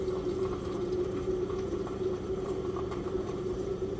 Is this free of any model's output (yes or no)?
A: no